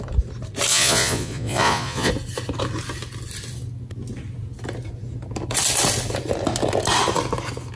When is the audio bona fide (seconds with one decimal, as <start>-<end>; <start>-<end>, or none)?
0.0-0.7; 2.1-7.8